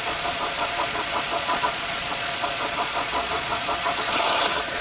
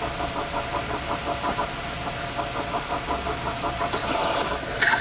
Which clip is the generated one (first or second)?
first